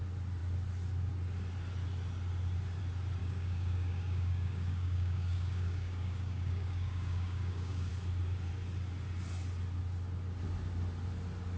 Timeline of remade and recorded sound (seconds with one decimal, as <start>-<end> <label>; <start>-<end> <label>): 0.0-3.2 recorded; 3.2-7.9 remade; 7.9-11.6 recorded